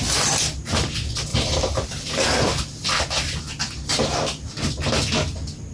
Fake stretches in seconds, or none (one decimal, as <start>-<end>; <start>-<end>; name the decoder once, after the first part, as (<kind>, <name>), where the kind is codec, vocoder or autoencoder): 1.3-3.4 (vocoder, BigVGAN v2)